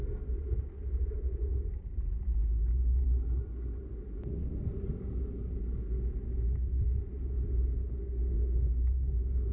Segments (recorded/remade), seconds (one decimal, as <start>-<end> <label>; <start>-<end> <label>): 0.0-9.5 recorded

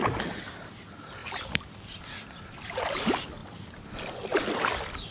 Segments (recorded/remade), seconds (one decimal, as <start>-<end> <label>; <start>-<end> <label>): 0.0-1.2 recorded; 1.2-2.0 remade; 2.0-5.1 recorded